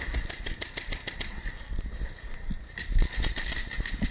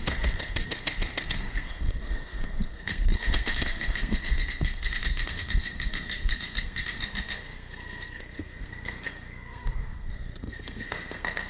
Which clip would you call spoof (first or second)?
second